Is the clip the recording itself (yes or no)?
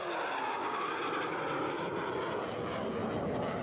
yes